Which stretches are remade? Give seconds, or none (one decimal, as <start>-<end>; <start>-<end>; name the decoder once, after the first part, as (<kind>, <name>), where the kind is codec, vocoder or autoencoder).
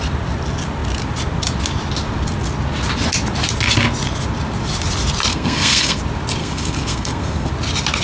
5.3-6.0 (codec, SNAC); 6.4-7.5